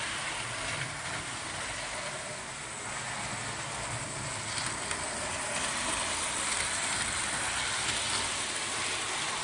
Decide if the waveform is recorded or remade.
recorded